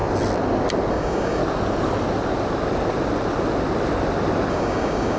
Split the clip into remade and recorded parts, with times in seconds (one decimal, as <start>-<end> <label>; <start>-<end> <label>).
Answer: 0.0-0.9 recorded; 0.9-1.4 remade; 1.4-4.5 recorded; 4.5-5.2 remade